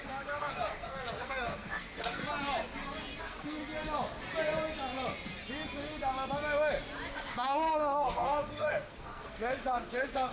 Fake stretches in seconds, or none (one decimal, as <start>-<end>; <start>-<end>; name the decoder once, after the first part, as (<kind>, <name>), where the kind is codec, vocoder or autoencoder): 0.0-2.2 (codec, SNAC); 3.2-3.6; 7.1-10.3